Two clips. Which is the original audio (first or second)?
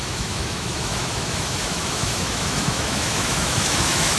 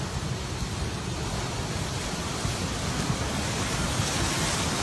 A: second